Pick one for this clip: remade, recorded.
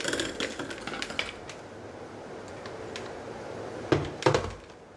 recorded